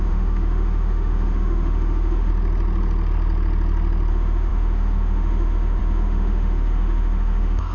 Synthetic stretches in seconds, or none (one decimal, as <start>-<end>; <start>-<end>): 0.0-2.3; 4.1-7.7